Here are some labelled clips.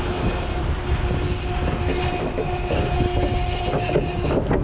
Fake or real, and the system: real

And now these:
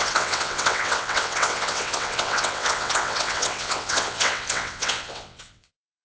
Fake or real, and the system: fake, vocoder, WaveNeXt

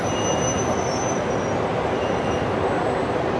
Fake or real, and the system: real